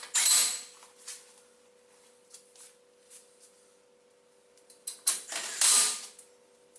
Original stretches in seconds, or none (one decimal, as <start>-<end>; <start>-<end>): 0.0-6.8